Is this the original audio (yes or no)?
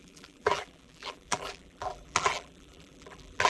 no